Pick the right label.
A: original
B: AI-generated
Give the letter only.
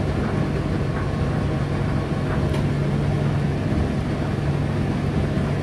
A